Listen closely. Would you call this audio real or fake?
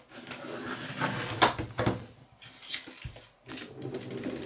real